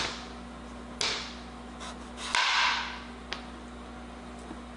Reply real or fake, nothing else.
real